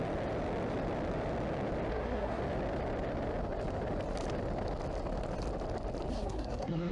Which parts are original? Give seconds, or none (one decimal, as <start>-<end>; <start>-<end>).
0.0-1.9; 2.4-6.1